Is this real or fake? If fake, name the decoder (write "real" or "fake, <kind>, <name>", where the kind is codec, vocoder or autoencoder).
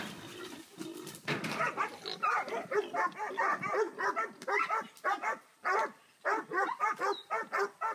real